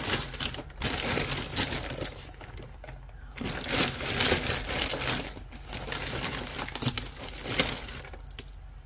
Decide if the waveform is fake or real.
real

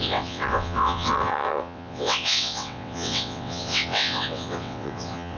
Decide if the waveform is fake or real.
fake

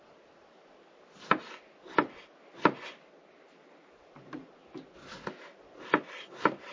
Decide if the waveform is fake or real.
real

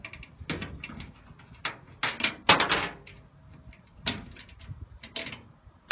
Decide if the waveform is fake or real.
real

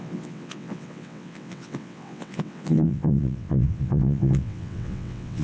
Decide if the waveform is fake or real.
fake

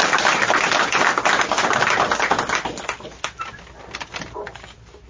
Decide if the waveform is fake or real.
real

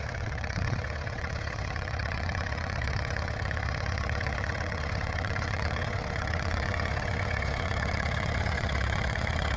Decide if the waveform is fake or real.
fake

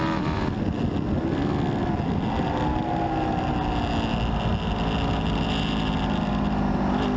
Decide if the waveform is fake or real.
real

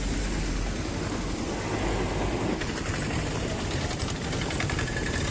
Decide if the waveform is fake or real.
real